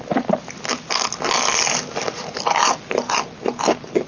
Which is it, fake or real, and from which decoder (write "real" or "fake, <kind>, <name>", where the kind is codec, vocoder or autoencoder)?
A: real